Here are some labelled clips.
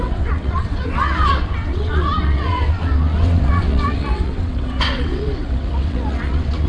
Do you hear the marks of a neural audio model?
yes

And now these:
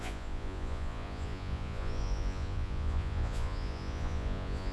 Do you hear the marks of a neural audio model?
yes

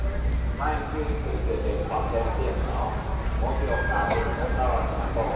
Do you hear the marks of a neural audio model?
no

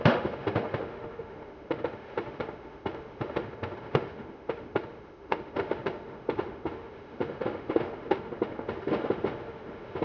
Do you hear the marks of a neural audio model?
yes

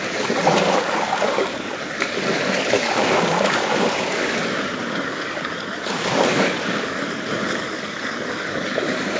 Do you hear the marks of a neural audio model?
yes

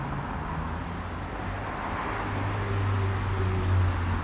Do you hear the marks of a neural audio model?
no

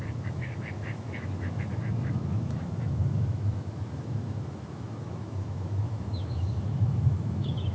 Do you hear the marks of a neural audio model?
yes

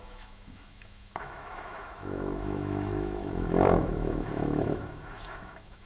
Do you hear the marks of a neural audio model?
yes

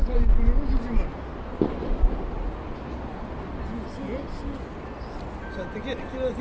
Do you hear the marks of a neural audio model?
no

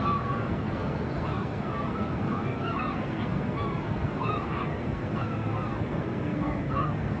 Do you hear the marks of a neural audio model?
yes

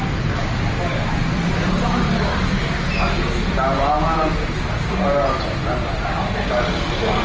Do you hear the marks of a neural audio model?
no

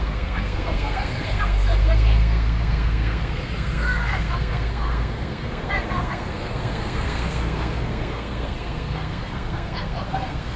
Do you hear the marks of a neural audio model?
yes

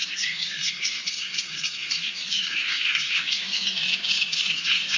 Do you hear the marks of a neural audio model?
yes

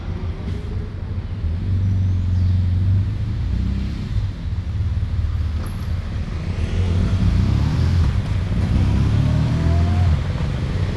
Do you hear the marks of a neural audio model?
no